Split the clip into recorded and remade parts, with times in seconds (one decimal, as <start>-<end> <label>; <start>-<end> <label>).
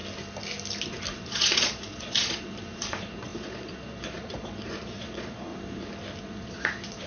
0.0-1.2 recorded; 1.2-5.5 remade; 5.5-6.2 recorded; 6.2-7.1 remade